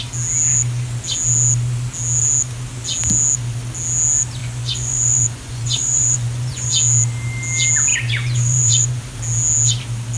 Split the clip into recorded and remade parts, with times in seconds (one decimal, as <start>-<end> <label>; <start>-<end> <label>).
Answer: 0.0-4.4 recorded; 4.4-6.7 remade; 6.7-7.9 recorded; 7.9-9.0 remade; 9.0-10.2 recorded